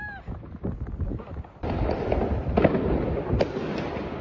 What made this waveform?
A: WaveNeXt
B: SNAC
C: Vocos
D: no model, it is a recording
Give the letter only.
D